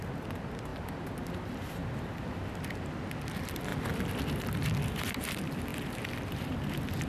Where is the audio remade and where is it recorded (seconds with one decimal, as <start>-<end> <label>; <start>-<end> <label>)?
0.0-0.7 recorded; 0.7-2.6 remade; 2.6-3.7 recorded; 3.7-4.5 remade; 4.5-7.1 recorded